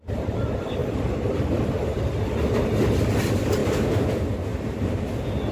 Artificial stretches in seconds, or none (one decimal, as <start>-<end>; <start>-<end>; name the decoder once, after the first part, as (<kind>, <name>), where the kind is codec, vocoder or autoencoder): 0.8-2.0 (vocoder, BigVGAN v2); 4.5-5.0